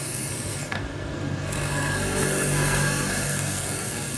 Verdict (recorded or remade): remade